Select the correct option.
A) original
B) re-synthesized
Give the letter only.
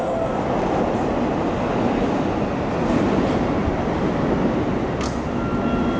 A